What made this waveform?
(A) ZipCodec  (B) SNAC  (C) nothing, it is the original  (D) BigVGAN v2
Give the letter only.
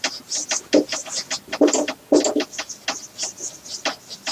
C